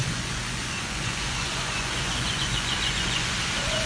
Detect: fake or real fake